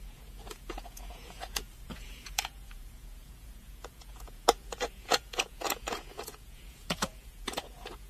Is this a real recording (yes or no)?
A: no